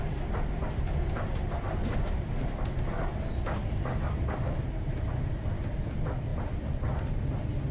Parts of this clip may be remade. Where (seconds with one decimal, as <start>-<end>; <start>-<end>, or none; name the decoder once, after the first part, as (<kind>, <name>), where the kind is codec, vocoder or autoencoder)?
6.3-7.2 (vocoder, BigVGAN v2)